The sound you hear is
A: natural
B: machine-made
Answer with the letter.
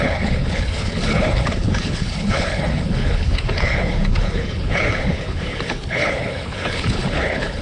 B